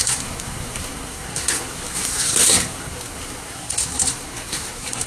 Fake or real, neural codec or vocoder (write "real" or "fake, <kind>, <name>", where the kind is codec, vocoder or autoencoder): fake, codec, SNAC